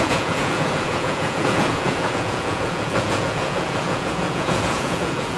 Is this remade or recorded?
remade